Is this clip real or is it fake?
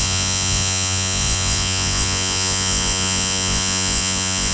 fake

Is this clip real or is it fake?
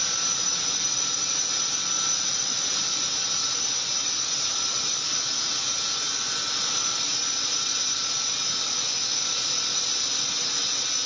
real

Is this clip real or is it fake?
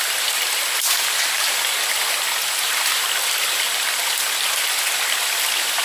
real